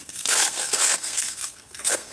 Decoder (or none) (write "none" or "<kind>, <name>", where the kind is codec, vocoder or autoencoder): codec, SNAC